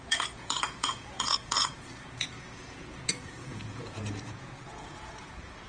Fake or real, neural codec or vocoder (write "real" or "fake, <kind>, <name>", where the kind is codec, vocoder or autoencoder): fake, vocoder, Vocos